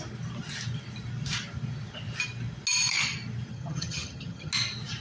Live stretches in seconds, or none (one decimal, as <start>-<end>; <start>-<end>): 0.0-3.5; 4.5-5.0